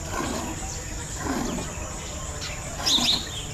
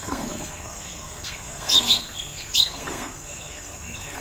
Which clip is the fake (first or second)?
second